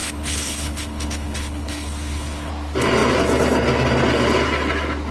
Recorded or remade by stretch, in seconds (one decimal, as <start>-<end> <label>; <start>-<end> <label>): 0.0-2.5 remade; 2.5-5.1 recorded